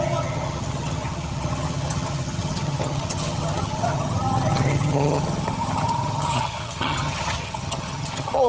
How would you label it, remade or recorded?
remade